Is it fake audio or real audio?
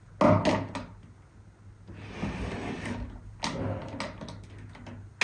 real